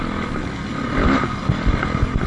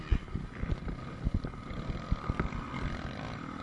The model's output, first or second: second